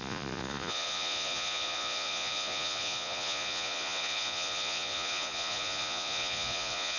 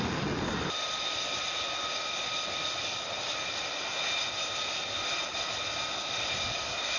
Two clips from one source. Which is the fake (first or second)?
first